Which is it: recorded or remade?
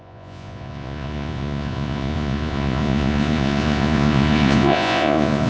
remade